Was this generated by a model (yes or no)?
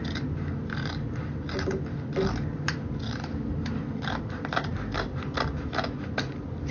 no